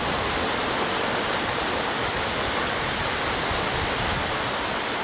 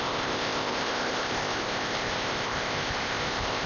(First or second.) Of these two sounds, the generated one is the second